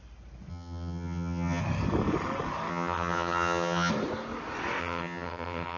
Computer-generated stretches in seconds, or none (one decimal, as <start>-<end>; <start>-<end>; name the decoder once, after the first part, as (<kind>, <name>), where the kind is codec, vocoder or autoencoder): 0.5-1.6 (vocoder, HiFi-GAN); 2.7-3.9; 4.8-5.8